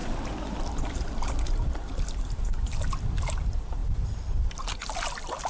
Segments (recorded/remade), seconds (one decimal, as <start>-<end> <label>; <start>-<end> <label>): 0.0-5.5 recorded